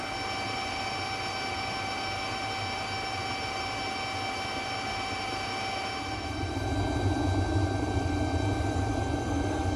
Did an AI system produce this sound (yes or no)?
no